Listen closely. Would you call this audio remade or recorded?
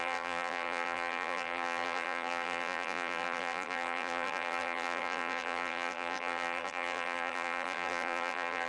remade